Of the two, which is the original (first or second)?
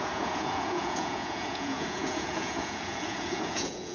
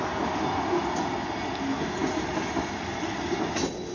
second